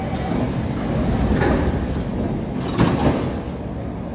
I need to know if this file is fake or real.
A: real